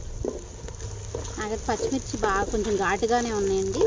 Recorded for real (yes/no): yes